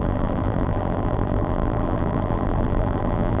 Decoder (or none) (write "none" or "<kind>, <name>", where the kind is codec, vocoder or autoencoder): vocoder, BigVGAN v2